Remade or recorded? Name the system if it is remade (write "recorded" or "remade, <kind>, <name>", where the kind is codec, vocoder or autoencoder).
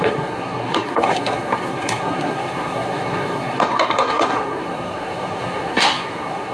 remade, codec, SNAC